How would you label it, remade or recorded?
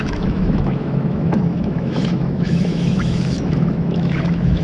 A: remade